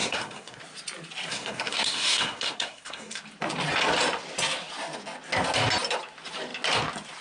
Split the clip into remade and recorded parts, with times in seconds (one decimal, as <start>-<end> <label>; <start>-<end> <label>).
0.0-0.6 remade; 0.6-1.3 recorded; 1.3-3.2 remade; 3.2-7.2 recorded